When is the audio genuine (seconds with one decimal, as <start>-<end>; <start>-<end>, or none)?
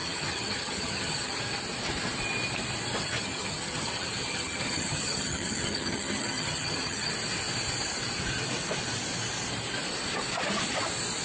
1.4-3.0; 7.1-11.2